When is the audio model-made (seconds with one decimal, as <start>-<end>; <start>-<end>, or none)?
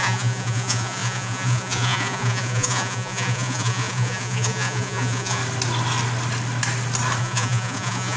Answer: 0.0-5.4; 7.2-8.2